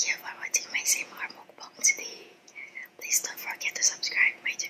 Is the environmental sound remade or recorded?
remade